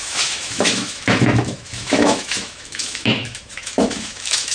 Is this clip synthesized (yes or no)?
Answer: yes